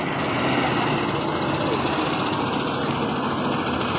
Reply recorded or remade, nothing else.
recorded